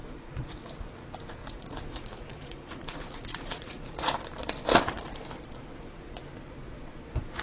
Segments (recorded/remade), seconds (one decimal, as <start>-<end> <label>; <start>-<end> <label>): 0.0-0.7 remade; 0.7-1.4 recorded; 1.4-4.2 remade; 4.2-5.7 recorded; 5.7-6.2 remade; 6.2-7.4 recorded